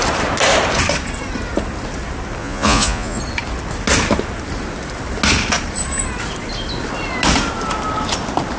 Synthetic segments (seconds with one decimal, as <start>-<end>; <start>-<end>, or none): 2.4-3.2